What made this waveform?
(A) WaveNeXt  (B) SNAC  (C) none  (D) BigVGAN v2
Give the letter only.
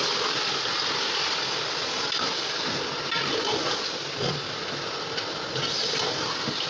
C